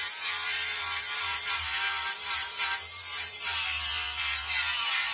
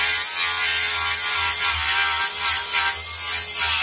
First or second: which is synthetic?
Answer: first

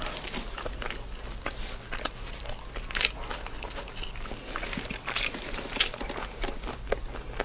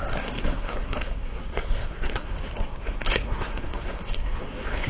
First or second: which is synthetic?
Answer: second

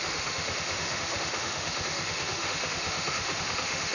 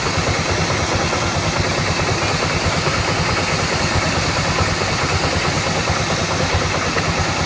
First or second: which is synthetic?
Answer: first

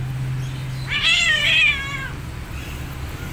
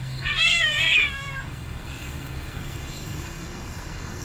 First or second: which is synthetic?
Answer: second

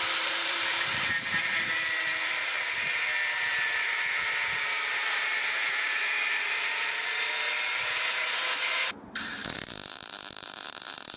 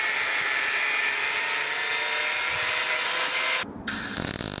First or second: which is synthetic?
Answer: first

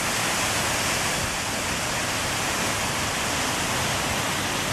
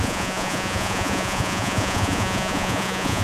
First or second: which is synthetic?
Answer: second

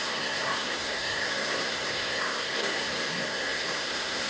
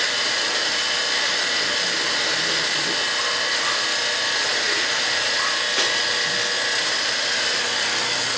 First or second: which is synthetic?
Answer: first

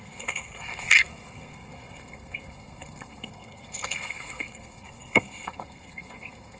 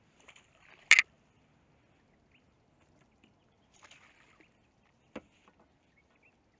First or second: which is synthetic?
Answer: first